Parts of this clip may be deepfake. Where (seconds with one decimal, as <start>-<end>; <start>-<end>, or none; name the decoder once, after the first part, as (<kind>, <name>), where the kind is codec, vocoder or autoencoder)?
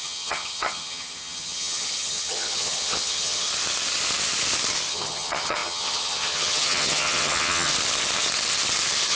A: 0.0-3.5 (vocoder, HiFi-GAN); 4.9-7.7